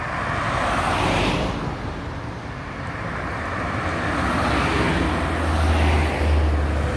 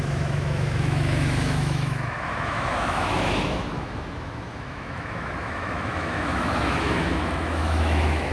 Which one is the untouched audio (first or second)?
first